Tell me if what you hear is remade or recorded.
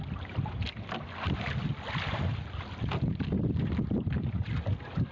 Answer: recorded